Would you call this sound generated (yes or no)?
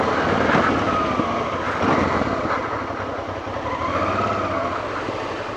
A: no